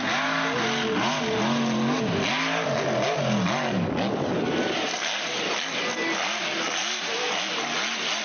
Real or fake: real